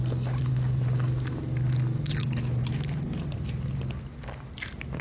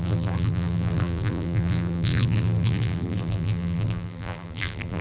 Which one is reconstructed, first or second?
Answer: second